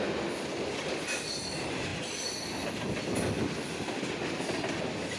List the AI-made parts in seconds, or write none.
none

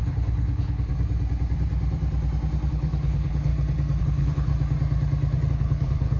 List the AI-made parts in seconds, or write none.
0.0-0.9; 2.7-3.5; 4.0-4.5; 5.5-6.2